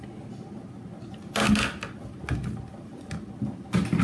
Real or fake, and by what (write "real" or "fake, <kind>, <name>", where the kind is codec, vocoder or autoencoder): real